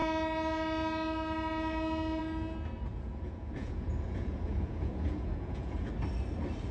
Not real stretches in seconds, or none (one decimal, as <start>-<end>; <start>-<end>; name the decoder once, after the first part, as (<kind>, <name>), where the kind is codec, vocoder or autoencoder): 2.9-5.9 (vocoder, Vocos)